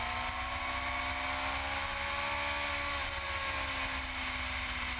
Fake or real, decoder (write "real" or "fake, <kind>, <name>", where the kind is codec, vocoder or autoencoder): real